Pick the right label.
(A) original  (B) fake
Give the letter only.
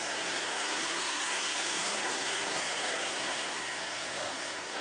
B